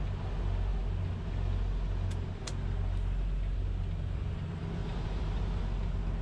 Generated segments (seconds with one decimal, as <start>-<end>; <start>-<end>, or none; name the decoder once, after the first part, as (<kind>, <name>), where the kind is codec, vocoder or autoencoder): 4.8-5.6 (vocoder, BigVGAN v2)